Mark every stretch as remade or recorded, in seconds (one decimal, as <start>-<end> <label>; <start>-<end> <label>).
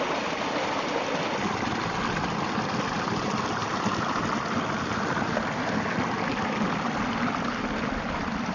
0.0-8.5 recorded